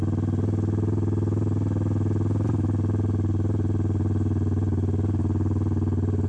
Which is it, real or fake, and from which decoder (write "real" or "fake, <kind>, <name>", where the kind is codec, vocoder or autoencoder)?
real